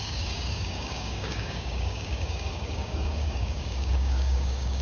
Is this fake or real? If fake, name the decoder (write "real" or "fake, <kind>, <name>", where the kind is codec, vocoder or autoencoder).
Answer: fake, codec, DAC